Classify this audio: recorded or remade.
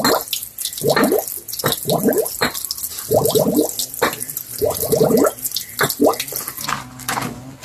recorded